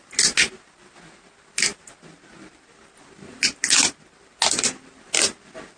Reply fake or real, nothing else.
real